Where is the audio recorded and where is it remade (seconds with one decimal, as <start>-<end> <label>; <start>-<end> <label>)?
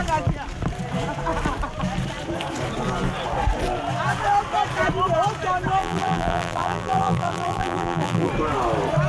0.0-5.8 recorded; 5.8-8.3 remade; 8.3-9.1 recorded